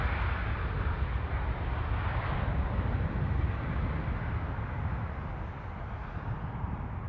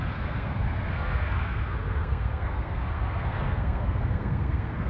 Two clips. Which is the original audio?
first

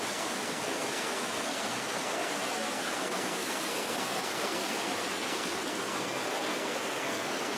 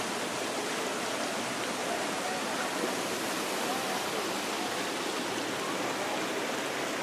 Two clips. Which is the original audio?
second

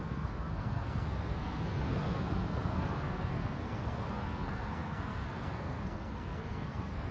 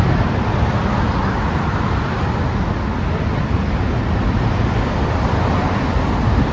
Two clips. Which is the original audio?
second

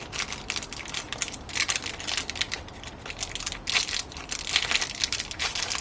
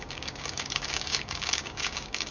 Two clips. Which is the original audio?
first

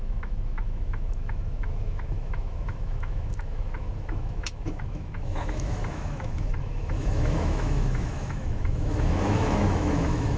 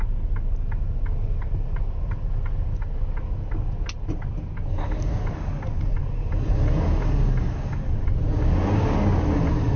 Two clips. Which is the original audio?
second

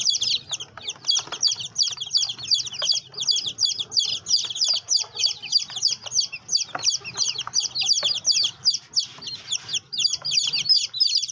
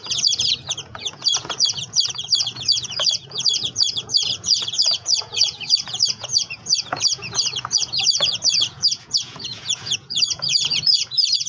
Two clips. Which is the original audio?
first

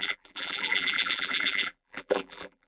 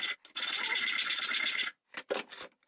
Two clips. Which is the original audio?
second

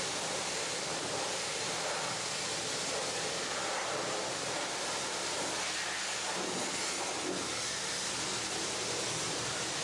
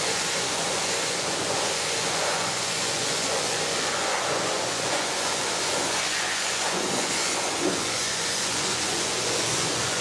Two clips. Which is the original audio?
first